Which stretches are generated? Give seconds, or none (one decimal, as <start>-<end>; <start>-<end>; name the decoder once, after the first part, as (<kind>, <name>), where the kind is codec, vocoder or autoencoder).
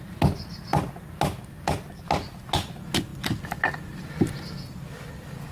none